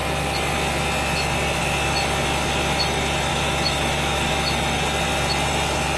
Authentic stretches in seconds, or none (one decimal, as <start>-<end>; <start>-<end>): 0.0-3.3; 4.3-6.0